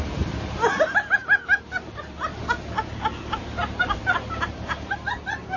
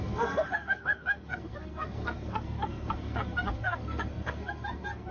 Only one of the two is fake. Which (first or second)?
second